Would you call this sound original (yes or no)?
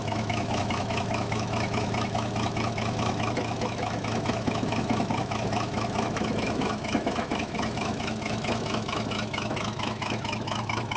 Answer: no